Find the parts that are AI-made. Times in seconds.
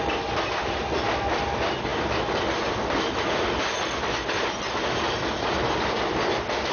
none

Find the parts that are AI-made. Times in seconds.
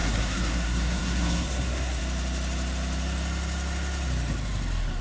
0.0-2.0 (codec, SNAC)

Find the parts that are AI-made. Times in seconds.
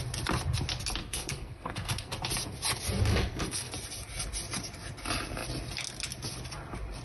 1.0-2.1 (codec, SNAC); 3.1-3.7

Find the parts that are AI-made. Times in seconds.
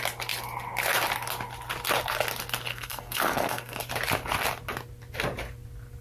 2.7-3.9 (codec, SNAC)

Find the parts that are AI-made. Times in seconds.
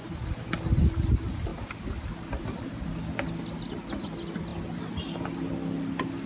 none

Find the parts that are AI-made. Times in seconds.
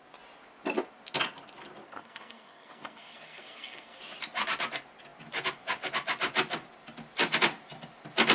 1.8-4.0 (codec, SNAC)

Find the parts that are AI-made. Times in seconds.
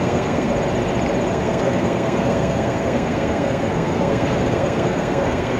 0.0-0.5 (codec, SNAC); 1.3-5.6